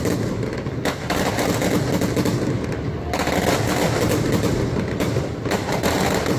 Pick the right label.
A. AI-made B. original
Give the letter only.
B